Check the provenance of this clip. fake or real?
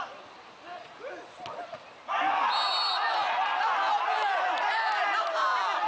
real